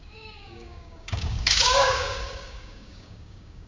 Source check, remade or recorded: remade